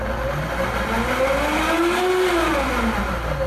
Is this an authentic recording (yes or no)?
yes